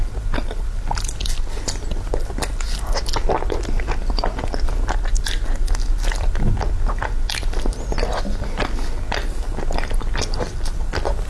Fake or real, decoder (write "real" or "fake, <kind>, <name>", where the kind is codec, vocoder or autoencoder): real